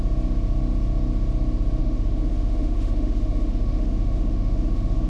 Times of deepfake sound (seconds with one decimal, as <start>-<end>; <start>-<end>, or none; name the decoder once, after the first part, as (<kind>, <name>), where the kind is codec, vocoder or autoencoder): 1.8-5.1 (autoencoder, DAC-VAE)